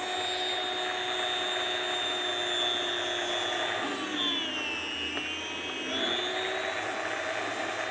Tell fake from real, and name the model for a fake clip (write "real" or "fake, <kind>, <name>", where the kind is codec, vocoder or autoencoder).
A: real